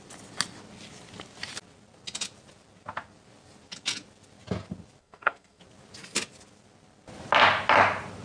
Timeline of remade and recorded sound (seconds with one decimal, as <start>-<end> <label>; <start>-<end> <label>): 0.0-5.0 recorded; 5.0-5.6 remade; 5.6-8.2 recorded